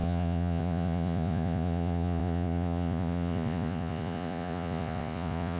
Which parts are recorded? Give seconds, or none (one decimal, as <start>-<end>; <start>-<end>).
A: none